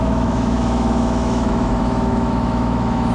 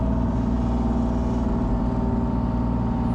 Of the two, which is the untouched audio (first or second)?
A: second